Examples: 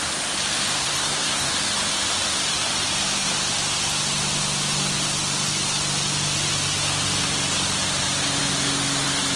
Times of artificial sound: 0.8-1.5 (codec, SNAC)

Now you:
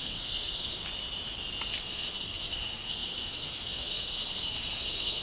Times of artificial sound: 0.0-0.8 (codec, SNAC); 1.8-5.2

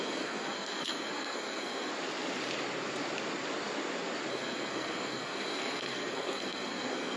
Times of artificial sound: 0.0-1.9 (codec, SNAC); 4.3-7.2

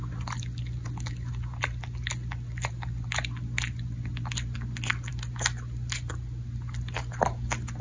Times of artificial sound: none